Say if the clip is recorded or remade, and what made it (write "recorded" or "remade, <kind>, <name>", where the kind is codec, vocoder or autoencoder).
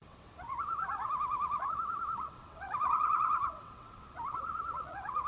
remade, vocoder, WaveNeXt